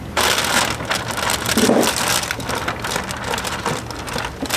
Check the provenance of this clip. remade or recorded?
recorded